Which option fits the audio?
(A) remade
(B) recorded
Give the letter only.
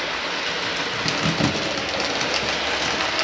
B